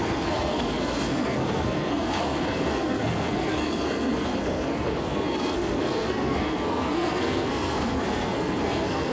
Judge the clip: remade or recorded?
remade